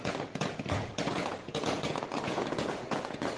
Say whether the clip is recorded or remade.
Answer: remade